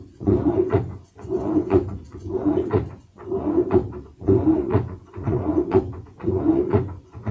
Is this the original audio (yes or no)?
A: no